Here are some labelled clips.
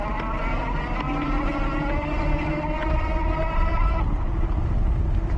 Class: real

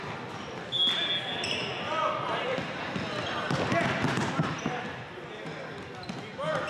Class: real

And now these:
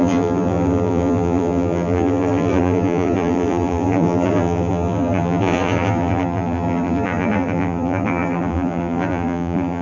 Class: fake